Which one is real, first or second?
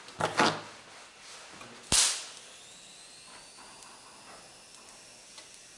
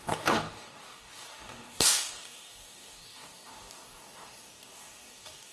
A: first